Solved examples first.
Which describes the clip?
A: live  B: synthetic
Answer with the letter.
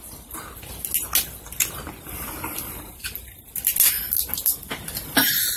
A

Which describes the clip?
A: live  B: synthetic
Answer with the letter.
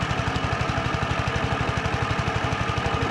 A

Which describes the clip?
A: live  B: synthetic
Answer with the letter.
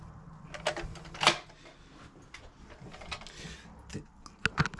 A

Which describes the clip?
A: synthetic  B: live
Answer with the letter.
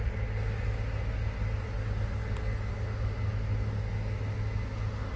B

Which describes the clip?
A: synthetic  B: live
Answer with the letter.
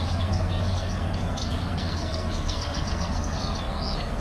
A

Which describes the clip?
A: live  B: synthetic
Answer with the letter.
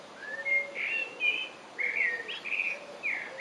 A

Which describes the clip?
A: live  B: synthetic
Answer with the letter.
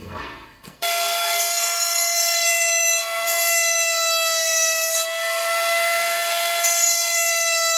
B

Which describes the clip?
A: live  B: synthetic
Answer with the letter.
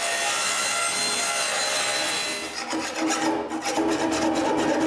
A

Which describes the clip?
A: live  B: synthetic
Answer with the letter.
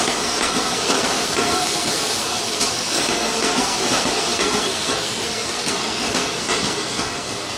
B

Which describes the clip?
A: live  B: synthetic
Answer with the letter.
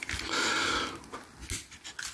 A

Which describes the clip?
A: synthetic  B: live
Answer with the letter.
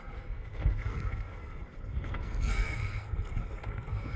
A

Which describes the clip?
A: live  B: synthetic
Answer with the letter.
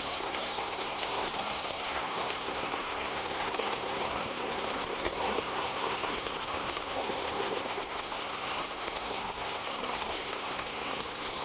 B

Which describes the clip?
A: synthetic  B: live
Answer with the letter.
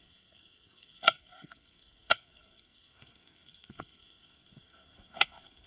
A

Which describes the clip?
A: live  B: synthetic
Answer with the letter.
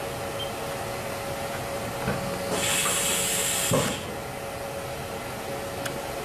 A